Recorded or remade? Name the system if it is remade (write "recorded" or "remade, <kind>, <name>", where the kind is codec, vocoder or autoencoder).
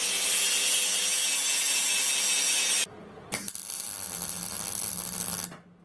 recorded